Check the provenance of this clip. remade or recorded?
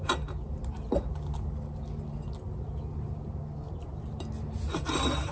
recorded